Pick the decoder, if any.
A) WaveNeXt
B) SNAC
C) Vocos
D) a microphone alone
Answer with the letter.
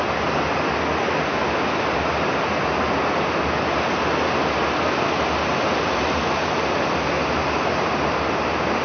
D